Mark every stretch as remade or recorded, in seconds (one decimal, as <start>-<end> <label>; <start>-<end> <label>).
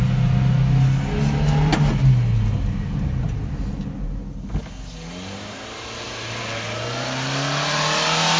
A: 0.0-8.4 recorded